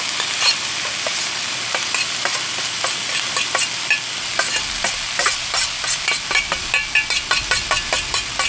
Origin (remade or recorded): recorded